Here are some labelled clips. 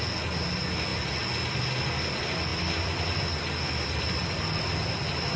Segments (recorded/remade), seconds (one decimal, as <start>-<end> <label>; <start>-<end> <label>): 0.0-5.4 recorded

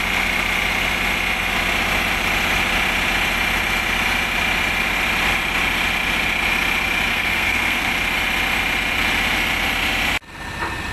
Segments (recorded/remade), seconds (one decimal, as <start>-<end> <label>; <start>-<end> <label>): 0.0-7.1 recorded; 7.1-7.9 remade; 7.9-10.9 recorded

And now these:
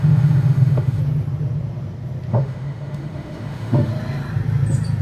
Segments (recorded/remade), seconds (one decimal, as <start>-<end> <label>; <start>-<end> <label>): 0.0-1.0 remade; 1.0-2.3 recorded; 2.3-3.9 remade; 3.9-5.0 recorded

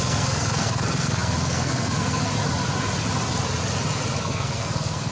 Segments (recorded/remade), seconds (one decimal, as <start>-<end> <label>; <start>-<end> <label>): 0.0-2.3 remade; 2.3-4.2 recorded; 4.2-5.1 remade

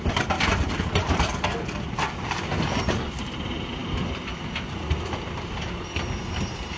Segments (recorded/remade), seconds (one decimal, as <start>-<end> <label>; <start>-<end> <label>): 0.0-6.8 recorded

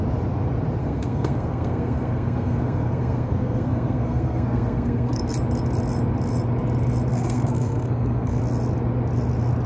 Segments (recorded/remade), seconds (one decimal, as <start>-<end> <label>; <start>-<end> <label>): 0.0-0.8 recorded; 0.8-5.2 remade; 5.2-7.1 recorded; 7.1-8.4 remade; 8.4-9.7 recorded

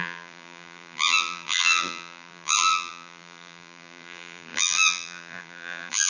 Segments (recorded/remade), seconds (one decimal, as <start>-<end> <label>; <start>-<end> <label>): 0.0-6.1 remade